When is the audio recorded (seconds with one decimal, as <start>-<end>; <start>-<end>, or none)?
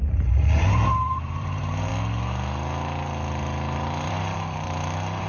1.9-4.1